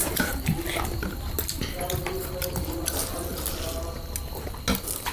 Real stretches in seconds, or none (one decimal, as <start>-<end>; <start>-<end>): 0.8-5.1